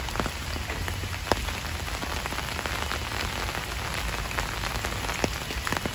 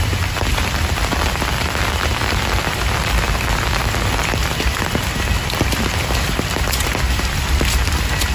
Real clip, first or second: first